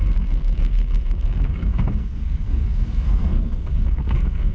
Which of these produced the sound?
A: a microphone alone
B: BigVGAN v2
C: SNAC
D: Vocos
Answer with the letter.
C